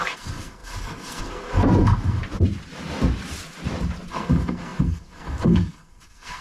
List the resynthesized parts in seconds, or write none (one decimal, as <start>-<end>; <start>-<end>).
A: 0.0-2.2; 4.1-6.4